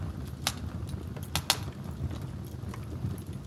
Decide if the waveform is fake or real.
real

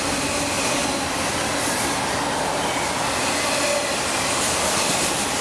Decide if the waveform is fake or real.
real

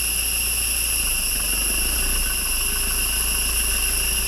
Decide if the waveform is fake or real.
real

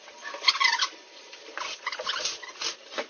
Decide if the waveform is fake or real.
real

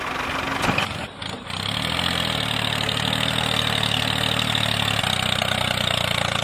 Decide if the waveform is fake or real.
real